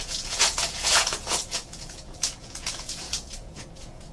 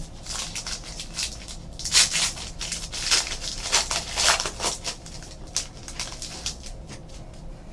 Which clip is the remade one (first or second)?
first